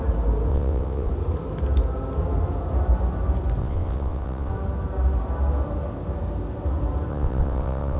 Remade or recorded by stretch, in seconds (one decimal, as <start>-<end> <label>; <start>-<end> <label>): 0.0-0.5 recorded; 0.5-1.1 remade; 1.1-3.6 recorded; 3.6-4.5 remade; 4.5-7.1 recorded; 7.1-8.0 remade